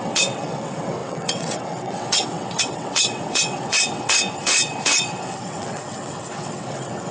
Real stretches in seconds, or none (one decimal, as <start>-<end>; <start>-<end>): none